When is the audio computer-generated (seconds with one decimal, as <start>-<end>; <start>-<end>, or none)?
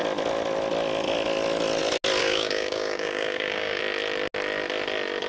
2.2-3.8